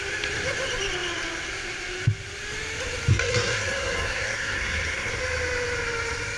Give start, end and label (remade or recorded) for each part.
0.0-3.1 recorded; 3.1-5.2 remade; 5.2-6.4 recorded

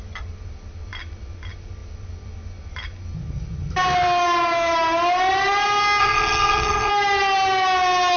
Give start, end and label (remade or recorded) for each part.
0.0-6.0 recorded; 6.0-6.9 remade; 6.9-8.2 recorded